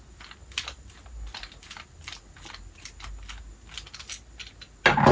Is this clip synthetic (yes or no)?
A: no